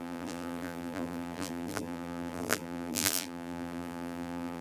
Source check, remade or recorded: remade